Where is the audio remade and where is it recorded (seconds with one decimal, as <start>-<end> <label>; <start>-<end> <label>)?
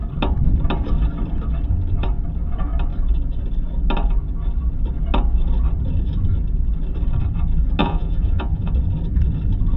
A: 0.0-7.8 recorded; 7.8-8.7 remade; 8.7-9.8 recorded